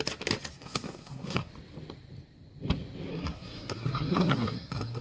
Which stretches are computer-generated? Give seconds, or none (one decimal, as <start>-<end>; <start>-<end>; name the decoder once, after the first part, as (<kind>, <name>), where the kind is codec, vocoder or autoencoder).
0.5-1.5 (codec, SNAC); 3.1-5.0